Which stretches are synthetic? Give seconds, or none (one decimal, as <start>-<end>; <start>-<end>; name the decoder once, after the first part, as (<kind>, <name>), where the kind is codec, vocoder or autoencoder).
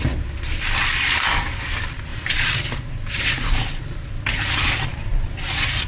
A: 2.1-3.8 (vocoder, BigVGAN v2); 4.9-5.5